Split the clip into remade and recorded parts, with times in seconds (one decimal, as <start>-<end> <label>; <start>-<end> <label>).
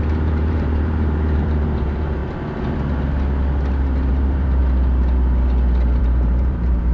0.0-2.2 remade; 2.2-4.1 recorded; 4.1-4.6 remade; 4.6-6.0 recorded; 6.0-6.9 remade